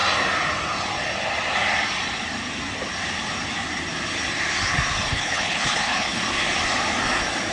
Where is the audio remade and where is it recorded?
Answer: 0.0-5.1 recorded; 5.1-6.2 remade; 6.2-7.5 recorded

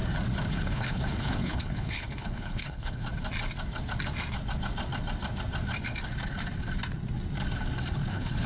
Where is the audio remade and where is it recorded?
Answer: 0.0-0.5 recorded; 0.5-3.0 remade; 3.0-8.1 recorded; 8.1-8.5 remade

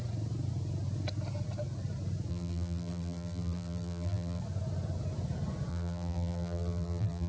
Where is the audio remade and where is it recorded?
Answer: 0.0-2.3 recorded; 2.3-4.4 remade; 4.4-5.7 recorded; 5.7-7.3 remade